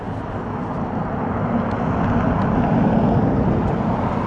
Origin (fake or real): real